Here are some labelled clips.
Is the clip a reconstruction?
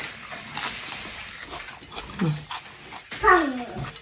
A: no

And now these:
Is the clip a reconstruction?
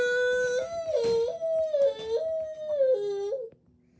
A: no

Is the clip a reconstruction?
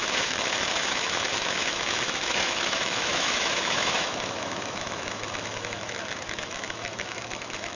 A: yes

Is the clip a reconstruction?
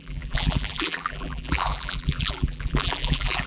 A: yes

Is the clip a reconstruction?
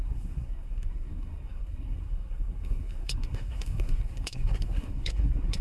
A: yes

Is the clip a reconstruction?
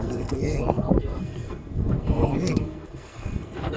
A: yes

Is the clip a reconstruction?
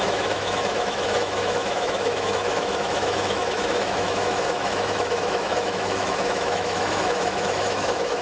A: yes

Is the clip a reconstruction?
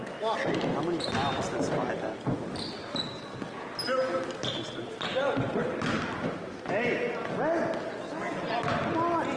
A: no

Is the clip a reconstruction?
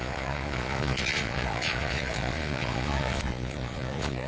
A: yes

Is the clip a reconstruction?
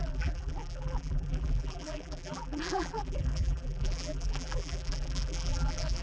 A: yes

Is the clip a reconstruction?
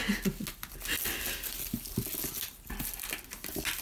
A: no